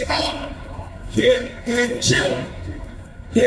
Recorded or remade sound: remade